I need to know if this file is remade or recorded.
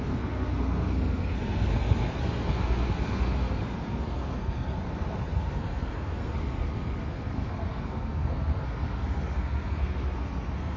remade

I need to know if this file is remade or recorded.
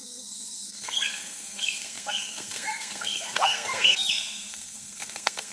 remade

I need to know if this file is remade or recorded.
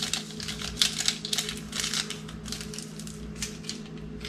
recorded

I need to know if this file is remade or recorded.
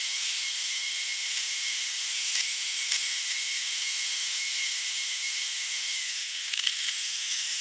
remade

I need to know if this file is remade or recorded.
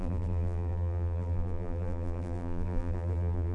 remade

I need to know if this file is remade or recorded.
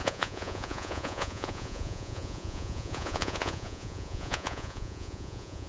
remade